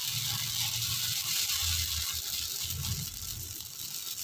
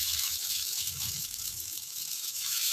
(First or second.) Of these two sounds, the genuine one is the first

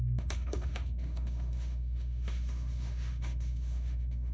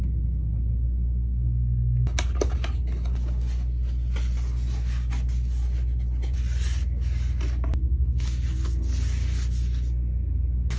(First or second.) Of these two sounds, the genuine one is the second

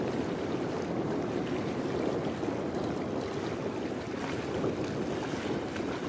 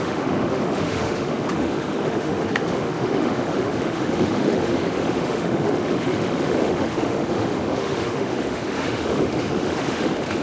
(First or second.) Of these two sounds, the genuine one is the first